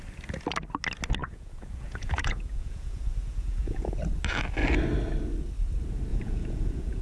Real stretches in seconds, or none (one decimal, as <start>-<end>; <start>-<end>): 0.0-1.2; 3.9-6.1